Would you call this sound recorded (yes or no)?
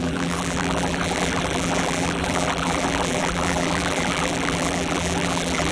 no